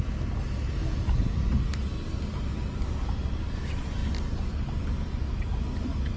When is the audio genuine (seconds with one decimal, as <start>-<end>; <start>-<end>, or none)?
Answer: 0.0-0.8; 1.4-6.2